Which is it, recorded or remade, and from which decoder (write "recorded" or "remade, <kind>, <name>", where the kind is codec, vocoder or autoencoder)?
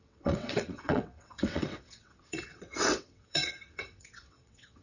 remade, vocoder, WaveNeXt